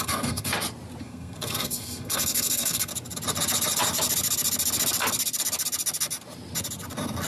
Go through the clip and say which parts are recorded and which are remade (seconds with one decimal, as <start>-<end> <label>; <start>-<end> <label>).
0.0-0.5 remade; 0.5-1.0 recorded; 1.0-2.9 remade; 2.9-7.3 recorded